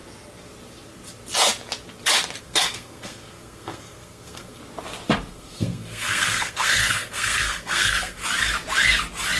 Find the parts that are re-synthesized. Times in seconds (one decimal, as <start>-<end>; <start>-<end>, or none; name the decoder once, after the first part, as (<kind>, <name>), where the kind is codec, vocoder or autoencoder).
2.4-4.6 (codec, SNAC); 5.3-8.2